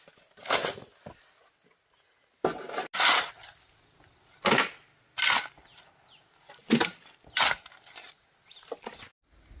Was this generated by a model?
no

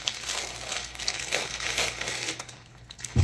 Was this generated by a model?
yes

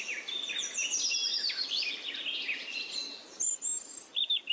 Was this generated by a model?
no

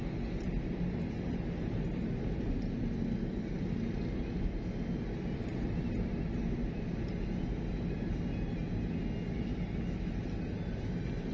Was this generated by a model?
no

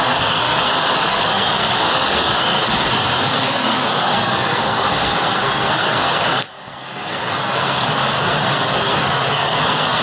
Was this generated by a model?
yes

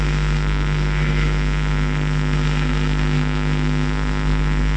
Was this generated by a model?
yes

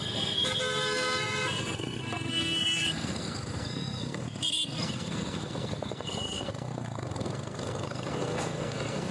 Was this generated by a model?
yes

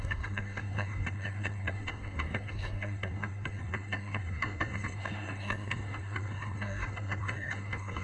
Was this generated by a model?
yes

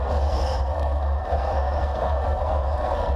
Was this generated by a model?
yes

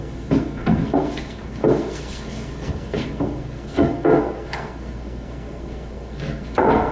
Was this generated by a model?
yes